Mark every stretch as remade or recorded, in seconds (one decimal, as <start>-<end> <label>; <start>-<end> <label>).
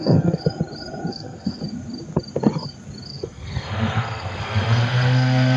0.0-0.4 remade; 0.4-1.1 recorded; 1.1-1.6 remade; 1.6-3.1 recorded; 3.1-5.6 remade